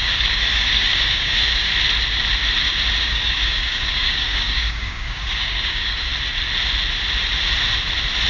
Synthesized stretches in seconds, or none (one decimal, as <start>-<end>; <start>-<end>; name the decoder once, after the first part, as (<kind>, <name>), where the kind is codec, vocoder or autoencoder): 0.0-1.7 (codec, DAC); 3.0-6.1